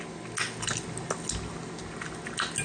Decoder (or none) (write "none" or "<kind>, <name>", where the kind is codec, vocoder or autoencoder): none